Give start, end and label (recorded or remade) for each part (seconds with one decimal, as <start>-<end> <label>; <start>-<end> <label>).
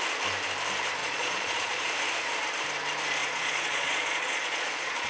0.0-1.0 recorded; 1.0-1.8 remade; 1.8-3.2 recorded; 3.2-5.1 remade